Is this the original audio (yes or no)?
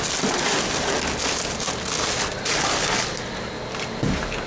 yes